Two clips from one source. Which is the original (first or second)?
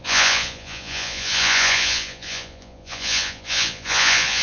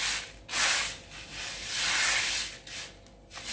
second